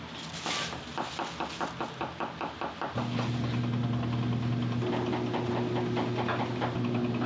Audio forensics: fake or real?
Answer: real